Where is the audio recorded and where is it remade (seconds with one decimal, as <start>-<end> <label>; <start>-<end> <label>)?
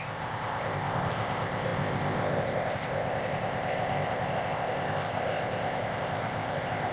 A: 0.0-6.9 remade